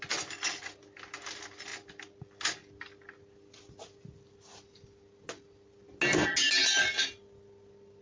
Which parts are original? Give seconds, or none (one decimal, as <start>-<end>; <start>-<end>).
0.0-8.0